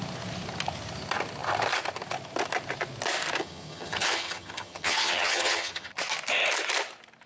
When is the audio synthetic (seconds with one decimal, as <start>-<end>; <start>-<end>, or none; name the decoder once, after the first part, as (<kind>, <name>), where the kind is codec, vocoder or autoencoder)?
3.4-5.9 (vocoder, HiFi-GAN)